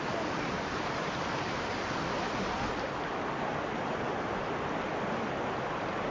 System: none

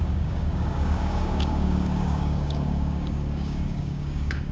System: codec, DAC